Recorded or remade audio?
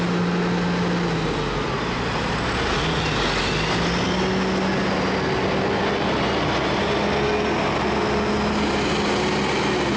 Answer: recorded